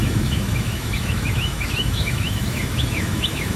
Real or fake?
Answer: fake